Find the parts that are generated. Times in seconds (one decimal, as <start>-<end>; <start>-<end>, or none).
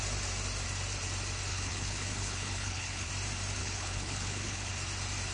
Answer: 1.5-3.1; 3.6-4.7